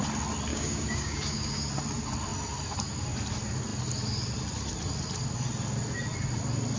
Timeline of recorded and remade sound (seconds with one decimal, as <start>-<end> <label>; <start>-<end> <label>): 0.0-0.5 recorded; 0.5-1.7 remade; 1.7-6.8 recorded